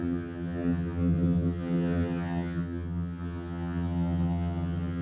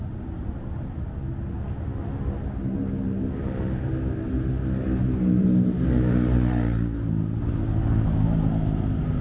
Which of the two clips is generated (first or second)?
first